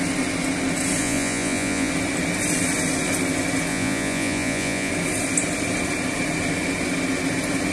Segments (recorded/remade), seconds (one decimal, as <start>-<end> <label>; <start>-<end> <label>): 0.0-1.0 recorded; 1.0-1.9 remade; 1.9-3.7 recorded; 3.7-4.9 remade; 4.9-7.7 recorded